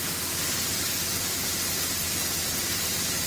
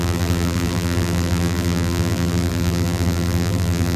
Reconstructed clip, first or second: second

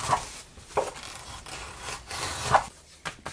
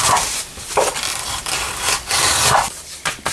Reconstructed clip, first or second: second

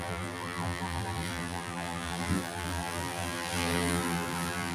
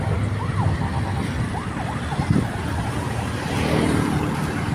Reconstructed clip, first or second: first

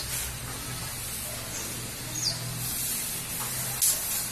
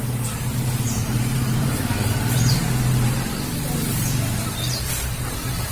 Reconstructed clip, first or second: second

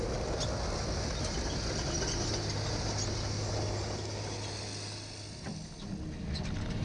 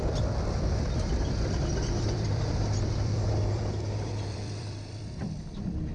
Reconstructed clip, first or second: second